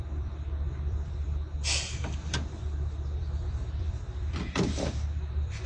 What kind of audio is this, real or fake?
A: fake